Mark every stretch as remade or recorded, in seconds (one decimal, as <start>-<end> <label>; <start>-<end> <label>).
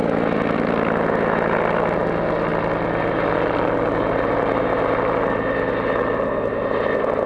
0.0-7.3 recorded